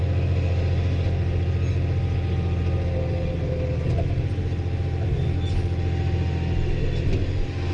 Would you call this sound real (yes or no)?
yes